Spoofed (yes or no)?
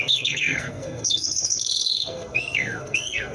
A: yes